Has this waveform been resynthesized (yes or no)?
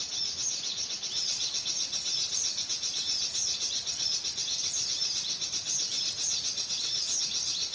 no